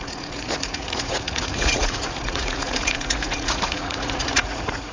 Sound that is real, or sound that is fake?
fake